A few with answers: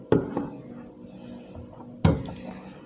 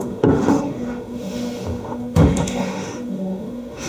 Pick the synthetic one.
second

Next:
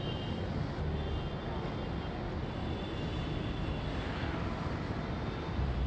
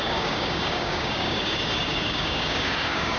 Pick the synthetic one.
second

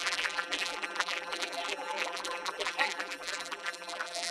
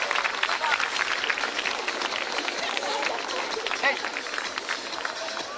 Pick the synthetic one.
first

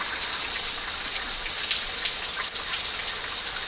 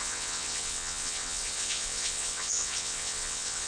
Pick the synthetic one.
second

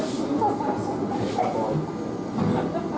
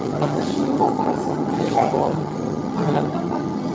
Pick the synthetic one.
second